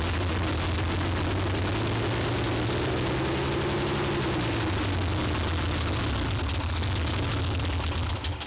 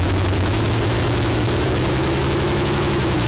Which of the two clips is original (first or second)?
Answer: first